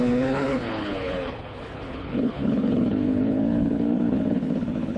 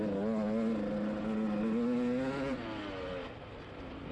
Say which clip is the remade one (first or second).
first